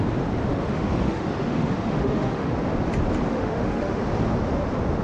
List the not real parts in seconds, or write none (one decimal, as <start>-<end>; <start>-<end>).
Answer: 0.5-2.5; 3.3-4.0